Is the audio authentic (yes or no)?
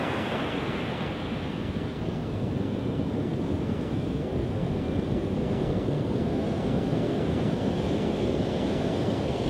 no